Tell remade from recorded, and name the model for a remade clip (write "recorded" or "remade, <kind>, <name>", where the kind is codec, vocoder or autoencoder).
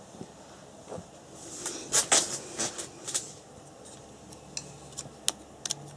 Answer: recorded